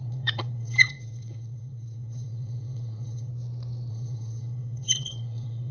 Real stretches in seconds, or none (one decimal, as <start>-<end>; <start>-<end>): 3.3-3.9

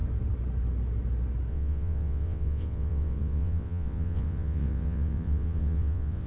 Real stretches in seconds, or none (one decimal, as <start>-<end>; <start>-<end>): 0.0-1.5